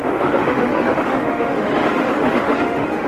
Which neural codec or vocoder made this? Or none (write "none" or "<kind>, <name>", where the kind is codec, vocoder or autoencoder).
autoencoder, DAC-VAE